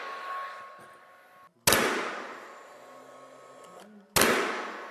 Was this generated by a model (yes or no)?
no